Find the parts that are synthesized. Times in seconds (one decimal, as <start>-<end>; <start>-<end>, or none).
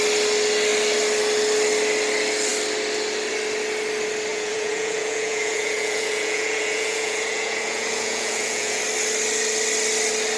4.3-8.8